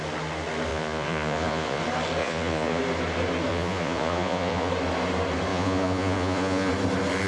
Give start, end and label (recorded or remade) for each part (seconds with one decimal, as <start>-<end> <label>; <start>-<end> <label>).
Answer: 0.0-0.7 recorded; 0.7-1.8 remade; 1.8-2.2 recorded; 2.2-2.8 remade; 2.8-3.5 recorded; 3.5-4.7 remade; 4.7-5.5 recorded; 5.5-6.7 remade; 6.7-7.3 recorded